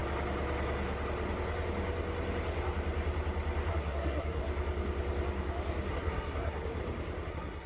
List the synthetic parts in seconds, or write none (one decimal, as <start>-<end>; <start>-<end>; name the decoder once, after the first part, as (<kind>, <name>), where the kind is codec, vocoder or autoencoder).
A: 3.7-4.4 (codec, SNAC); 5.9-6.8; 7.3-7.7